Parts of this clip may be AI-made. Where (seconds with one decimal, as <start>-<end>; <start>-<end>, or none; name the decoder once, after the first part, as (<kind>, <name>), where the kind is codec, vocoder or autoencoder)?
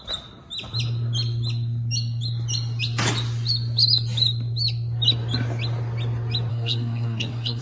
6.5-7.6 (codec, SNAC)